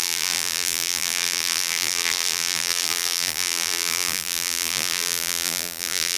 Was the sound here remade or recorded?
remade